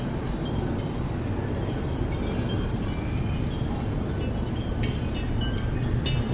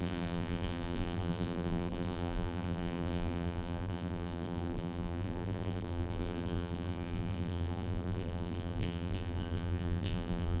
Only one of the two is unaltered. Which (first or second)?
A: first